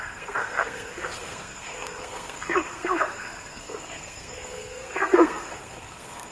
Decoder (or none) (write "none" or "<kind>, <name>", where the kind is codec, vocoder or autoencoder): codec, SNAC